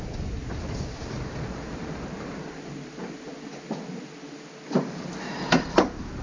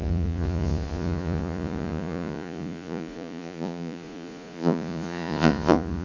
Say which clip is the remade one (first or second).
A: second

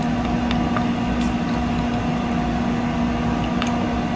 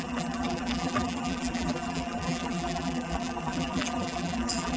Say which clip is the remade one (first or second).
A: second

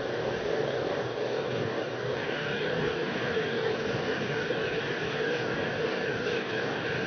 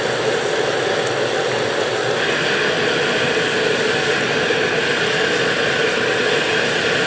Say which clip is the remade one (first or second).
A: first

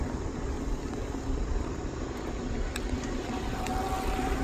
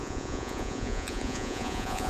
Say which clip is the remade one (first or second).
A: second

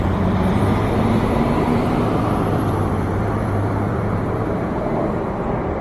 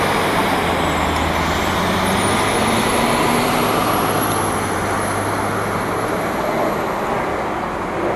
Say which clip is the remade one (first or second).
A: first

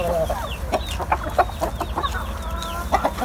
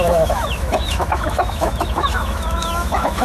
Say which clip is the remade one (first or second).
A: second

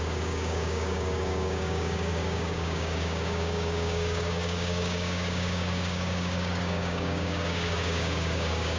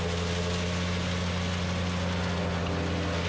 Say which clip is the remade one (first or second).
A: first